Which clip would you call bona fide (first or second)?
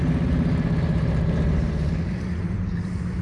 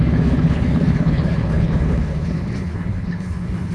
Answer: first